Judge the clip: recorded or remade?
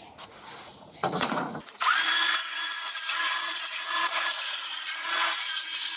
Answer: remade